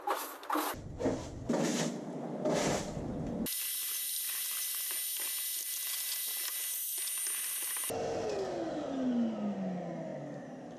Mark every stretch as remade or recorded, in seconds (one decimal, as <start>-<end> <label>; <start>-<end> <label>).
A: 0.0-0.4 recorded; 0.4-0.9 remade; 0.9-10.1 recorded; 10.1-10.8 remade